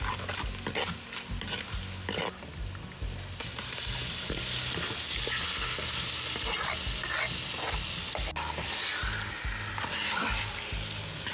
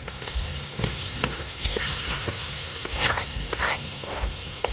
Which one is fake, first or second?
second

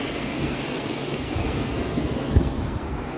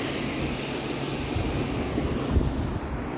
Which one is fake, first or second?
first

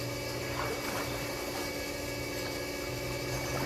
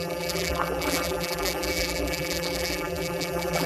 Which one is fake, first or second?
second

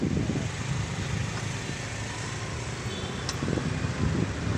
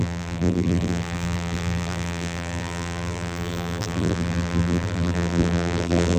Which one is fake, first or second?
second